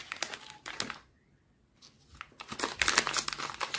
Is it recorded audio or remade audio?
recorded